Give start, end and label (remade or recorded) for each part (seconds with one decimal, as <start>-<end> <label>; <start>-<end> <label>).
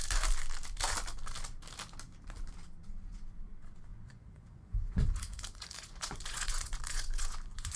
0.0-3.9 recorded; 3.9-7.8 remade